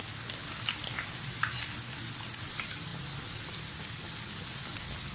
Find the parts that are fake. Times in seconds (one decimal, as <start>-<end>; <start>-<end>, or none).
none